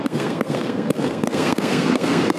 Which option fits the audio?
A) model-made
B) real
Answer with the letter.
A